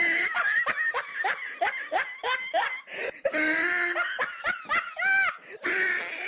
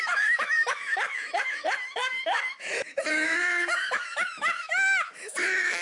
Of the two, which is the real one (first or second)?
first